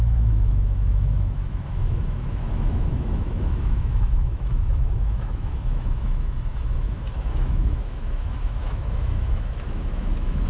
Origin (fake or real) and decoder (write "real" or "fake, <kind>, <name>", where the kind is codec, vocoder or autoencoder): fake, autoencoder, DAC-VAE